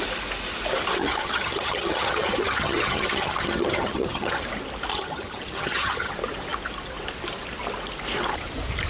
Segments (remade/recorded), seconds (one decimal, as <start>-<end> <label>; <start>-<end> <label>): 0.0-1.0 recorded; 1.0-4.4 remade; 4.4-4.9 recorded; 4.9-6.1 remade; 6.1-8.9 recorded